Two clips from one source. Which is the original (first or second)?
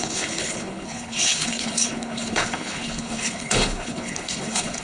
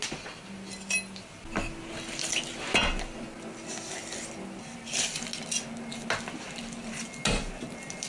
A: second